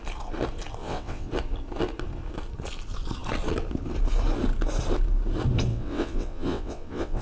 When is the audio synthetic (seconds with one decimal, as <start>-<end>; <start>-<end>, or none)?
0.8-1.3; 5.7-7.2